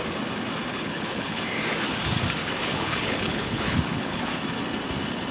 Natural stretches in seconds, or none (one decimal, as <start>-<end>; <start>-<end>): 0.0-0.7; 1.4-2.4; 4.2-5.3